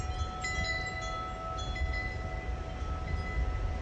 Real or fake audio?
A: real